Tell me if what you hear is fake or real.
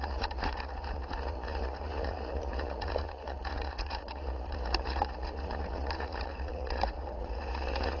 fake